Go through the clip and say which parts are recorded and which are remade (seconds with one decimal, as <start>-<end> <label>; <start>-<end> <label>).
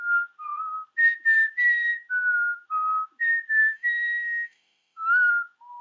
0.0-3.6 recorded; 3.6-5.3 remade; 5.3-5.8 recorded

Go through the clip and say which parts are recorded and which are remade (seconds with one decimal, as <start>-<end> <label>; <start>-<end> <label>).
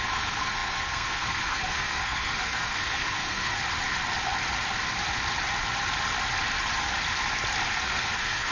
0.0-3.6 remade; 3.6-7.8 recorded; 7.8-8.5 remade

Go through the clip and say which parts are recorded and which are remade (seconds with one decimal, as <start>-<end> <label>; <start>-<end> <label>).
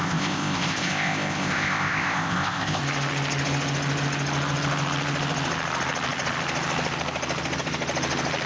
0.0-2.8 remade; 2.8-8.5 recorded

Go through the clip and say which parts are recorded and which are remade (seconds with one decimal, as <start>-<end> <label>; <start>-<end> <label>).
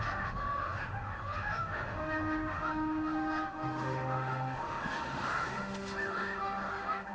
0.0-7.1 remade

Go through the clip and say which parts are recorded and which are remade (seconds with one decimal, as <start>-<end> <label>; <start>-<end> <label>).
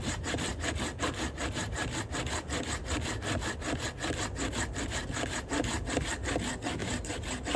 0.0-6.8 recorded; 6.8-7.6 remade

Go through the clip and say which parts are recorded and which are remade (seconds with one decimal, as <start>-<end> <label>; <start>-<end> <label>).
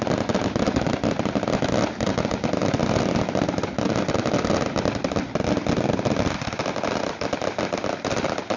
0.0-8.6 recorded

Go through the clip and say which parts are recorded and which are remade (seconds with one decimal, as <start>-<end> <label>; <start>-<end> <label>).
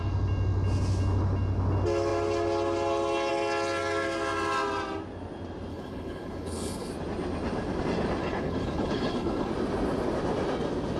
0.0-5.7 recorded; 5.7-6.9 remade; 6.9-8.2 recorded; 8.2-9.5 remade; 9.5-11.0 recorded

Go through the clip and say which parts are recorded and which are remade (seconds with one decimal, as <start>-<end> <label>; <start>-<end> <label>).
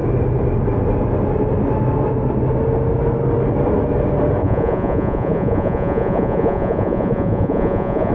0.0-4.4 recorded; 4.4-8.1 remade